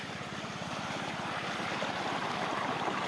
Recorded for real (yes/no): yes